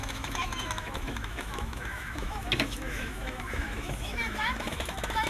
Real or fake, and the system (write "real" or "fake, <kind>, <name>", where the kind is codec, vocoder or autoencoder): fake, autoencoder, DAC-VAE